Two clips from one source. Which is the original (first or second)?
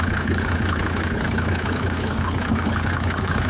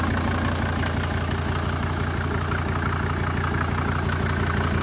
second